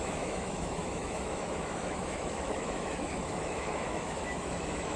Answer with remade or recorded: remade